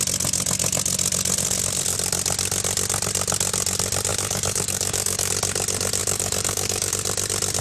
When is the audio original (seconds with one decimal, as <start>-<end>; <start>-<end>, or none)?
0.0-4.1; 5.3-6.0; 6.9-7.6